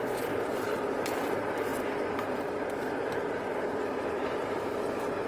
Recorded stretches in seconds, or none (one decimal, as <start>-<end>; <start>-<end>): 0.0-5.3